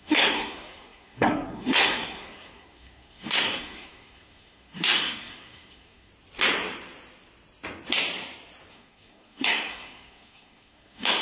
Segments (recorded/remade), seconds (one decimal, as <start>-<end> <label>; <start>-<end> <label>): 0.0-6.1 remade; 6.1-8.7 recorded; 8.7-11.2 remade